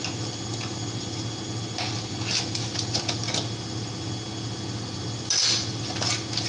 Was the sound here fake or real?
real